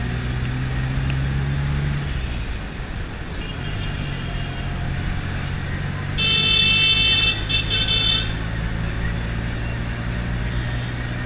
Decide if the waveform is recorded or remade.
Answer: recorded